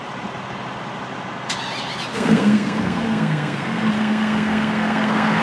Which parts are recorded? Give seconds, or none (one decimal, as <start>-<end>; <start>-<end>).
0.0-2.1